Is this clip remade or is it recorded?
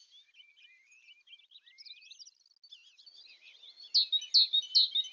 recorded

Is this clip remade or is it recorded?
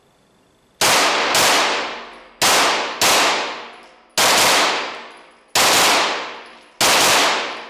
recorded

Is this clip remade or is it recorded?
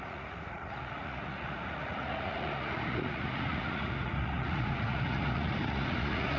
remade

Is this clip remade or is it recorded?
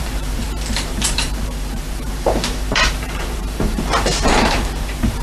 remade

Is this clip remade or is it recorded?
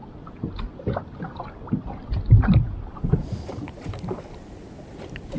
recorded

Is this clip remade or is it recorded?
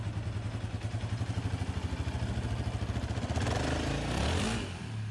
recorded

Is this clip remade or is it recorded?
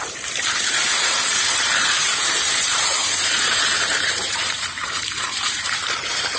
remade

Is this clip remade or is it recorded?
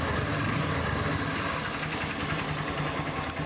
recorded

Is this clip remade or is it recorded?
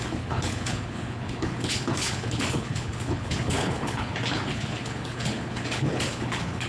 remade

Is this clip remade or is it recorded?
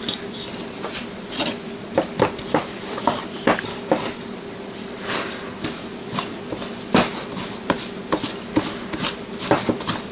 recorded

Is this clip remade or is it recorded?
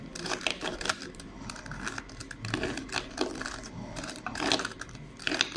remade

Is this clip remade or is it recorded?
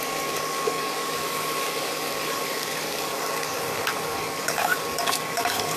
remade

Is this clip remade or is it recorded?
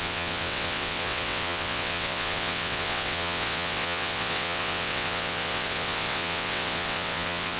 remade